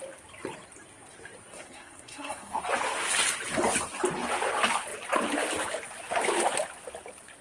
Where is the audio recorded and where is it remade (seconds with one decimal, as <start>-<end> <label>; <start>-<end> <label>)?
0.0-1.5 recorded; 1.5-2.6 remade; 2.6-7.4 recorded